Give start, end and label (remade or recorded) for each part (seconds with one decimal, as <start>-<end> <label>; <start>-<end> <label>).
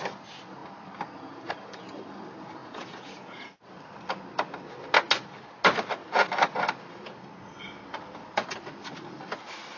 0.0-2.6 recorded; 2.6-3.6 remade; 3.6-9.8 recorded